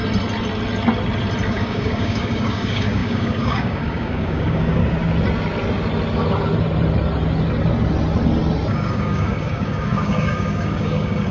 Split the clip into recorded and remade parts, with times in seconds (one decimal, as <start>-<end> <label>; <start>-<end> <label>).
0.0-1.5 recorded; 1.5-4.8 remade; 4.8-8.7 recorded; 8.7-11.3 remade